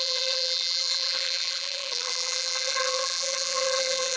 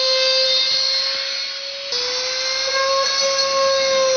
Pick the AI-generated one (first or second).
first